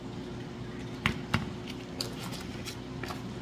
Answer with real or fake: real